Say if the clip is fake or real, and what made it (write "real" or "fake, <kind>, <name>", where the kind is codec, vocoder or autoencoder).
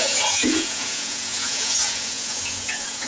fake, vocoder, Vocos